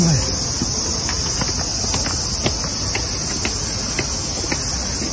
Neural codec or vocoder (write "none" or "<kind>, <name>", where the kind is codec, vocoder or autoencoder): none